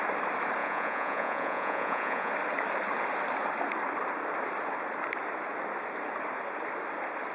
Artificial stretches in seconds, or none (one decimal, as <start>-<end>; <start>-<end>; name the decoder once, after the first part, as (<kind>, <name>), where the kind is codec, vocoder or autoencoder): 0.6-2.3 (vocoder, Vocos)